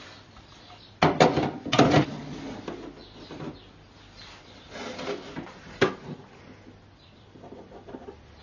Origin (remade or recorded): recorded